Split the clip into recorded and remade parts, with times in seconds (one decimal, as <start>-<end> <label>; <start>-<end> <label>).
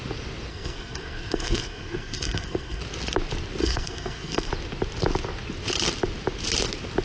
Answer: 0.0-0.5 recorded; 0.5-2.8 remade; 2.8-3.6 recorded; 3.6-4.5 remade; 4.5-7.0 recorded